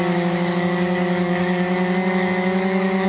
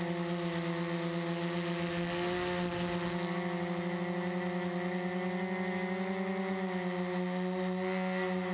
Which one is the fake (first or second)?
first